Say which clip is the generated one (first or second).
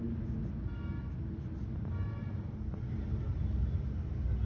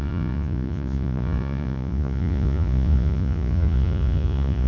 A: second